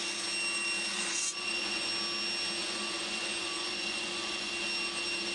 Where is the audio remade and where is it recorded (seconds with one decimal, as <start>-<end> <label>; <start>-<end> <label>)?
0.0-0.9 recorded; 0.9-1.9 remade; 1.9-2.6 recorded; 2.6-4.5 remade; 4.5-5.3 recorded